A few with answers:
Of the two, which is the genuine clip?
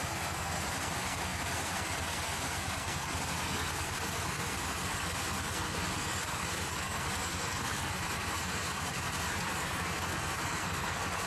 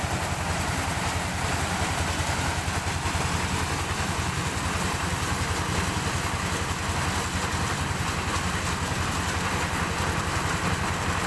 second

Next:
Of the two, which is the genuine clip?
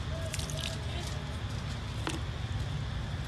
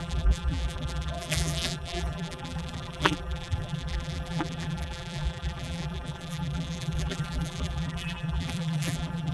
first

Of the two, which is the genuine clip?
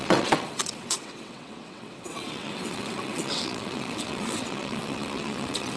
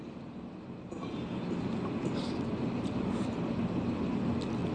second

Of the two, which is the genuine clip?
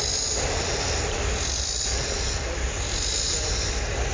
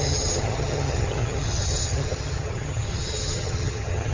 first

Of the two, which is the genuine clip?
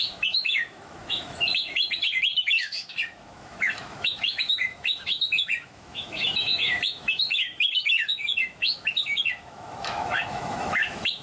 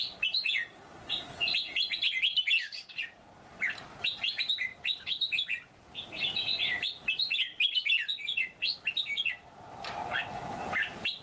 second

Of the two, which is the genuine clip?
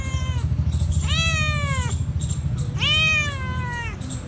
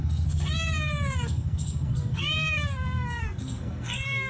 first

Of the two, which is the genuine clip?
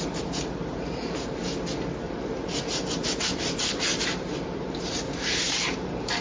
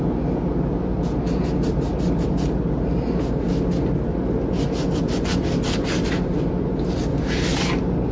second